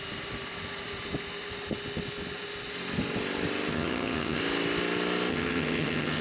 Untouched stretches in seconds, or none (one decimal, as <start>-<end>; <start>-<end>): 0.0-3.7; 4.4-5.3